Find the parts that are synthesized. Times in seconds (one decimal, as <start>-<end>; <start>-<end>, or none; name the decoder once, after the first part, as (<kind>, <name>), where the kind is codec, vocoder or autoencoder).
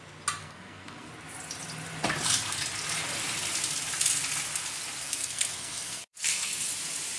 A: 0.4-1.1 (codec, SNAC); 5.0-6.7